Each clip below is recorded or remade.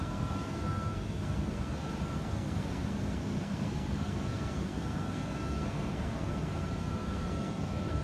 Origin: remade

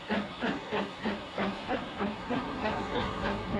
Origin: remade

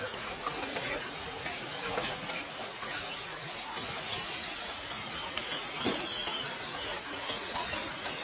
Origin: remade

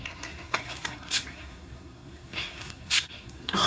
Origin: remade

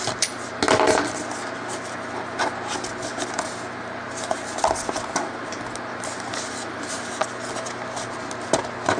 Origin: recorded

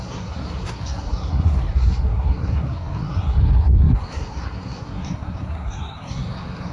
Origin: remade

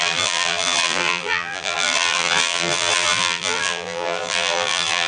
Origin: remade